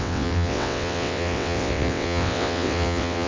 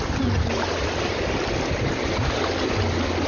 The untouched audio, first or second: second